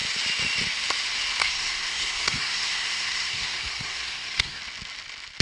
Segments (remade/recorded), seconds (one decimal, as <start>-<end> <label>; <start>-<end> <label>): 0.0-1.4 recorded; 1.4-4.6 remade; 4.6-5.4 recorded